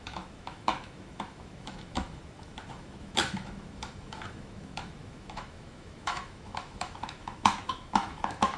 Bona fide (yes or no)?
no